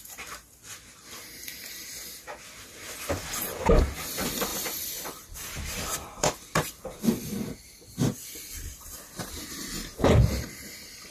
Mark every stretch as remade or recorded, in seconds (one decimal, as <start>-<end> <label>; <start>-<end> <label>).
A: 0.0-4.5 recorded; 4.5-9.3 remade; 9.3-11.1 recorded